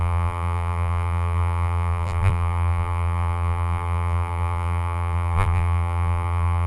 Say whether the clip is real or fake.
fake